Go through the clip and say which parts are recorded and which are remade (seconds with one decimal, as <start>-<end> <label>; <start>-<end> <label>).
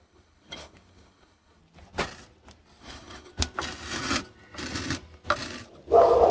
0.0-1.6 remade; 1.6-2.8 recorded; 2.8-3.3 remade; 3.3-6.3 recorded